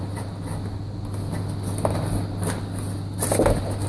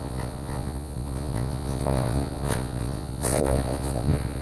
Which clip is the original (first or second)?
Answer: first